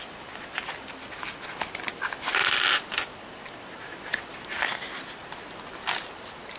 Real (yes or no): yes